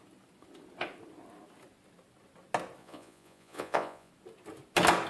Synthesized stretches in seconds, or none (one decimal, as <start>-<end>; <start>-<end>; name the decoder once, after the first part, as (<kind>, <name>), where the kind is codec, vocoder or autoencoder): 2.8-4.1 (vocoder, Vocos)